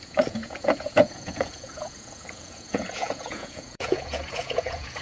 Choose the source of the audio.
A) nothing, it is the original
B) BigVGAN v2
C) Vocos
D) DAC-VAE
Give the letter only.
C